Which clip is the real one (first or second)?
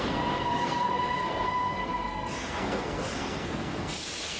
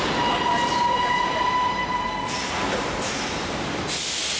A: second